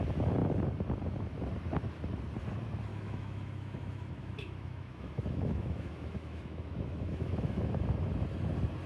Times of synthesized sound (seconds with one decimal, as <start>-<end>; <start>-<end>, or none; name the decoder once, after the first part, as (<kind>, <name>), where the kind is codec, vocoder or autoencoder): 2.9-7.9 (autoencoder, DAC-VAE)